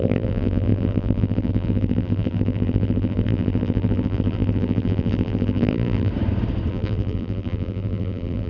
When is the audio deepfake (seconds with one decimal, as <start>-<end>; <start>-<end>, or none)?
0.0-6.1; 6.7-8.5